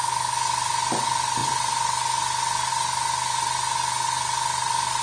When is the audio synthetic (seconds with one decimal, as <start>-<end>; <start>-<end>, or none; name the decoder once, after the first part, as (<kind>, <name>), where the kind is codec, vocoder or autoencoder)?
none